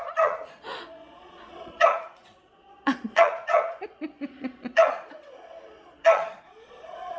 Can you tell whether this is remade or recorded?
remade